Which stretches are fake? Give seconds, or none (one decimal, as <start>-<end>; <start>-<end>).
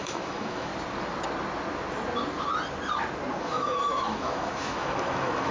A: 0.0-0.7; 3.4-5.5